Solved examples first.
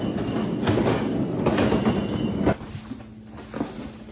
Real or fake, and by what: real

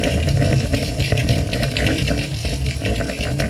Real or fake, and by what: real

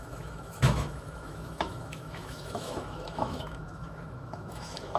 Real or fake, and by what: fake, autoencoder, DAC-VAE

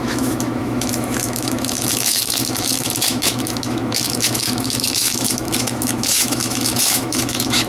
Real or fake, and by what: fake, autoencoder, DAC-VAE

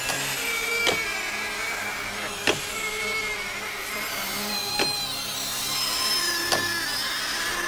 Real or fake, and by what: real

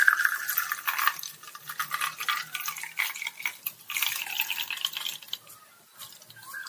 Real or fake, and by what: real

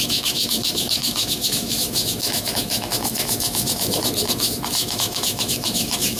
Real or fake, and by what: fake, autoencoder, DAC-VAE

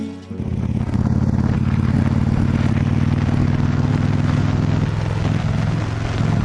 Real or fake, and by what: real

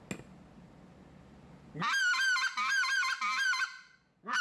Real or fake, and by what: real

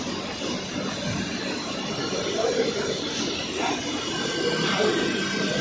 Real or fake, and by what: real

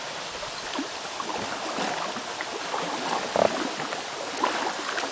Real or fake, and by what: real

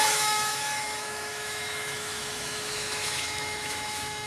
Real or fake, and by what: fake, autoencoder, DAC-VAE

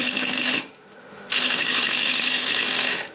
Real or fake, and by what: fake, autoencoder, DAC-VAE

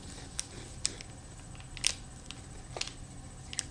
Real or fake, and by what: real